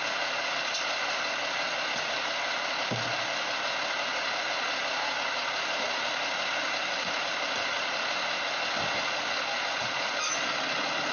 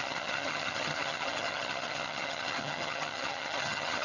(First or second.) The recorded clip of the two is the first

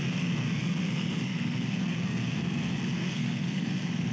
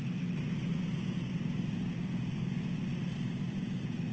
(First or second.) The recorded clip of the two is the second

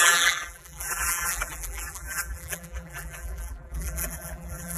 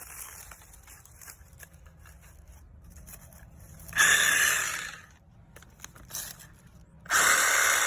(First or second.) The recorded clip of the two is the second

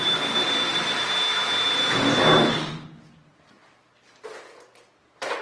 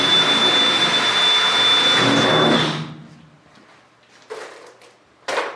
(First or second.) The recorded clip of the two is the second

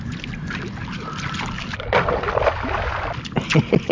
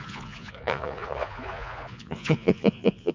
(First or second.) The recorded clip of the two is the first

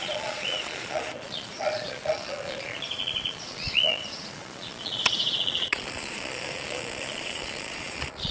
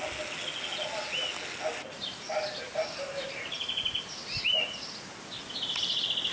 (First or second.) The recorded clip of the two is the second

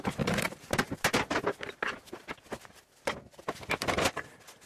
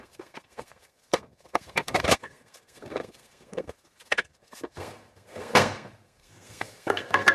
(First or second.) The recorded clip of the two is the first